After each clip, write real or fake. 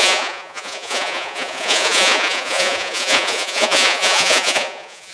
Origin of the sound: fake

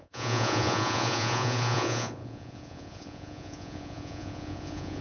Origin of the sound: fake